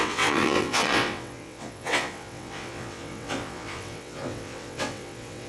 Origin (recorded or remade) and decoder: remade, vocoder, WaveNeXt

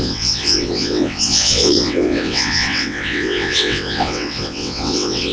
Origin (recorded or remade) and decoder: remade, vocoder, WaveNeXt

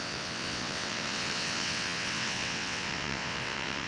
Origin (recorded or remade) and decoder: remade, vocoder, WaveNeXt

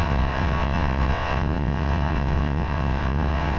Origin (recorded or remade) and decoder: remade, vocoder, WaveNeXt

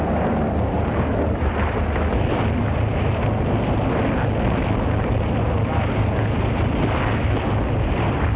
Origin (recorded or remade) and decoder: recorded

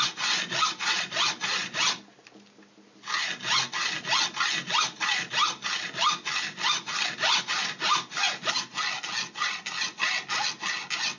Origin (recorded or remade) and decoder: recorded